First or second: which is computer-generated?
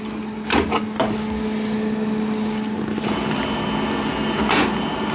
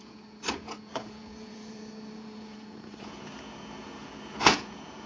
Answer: second